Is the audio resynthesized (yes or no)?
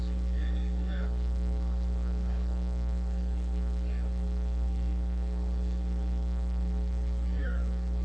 yes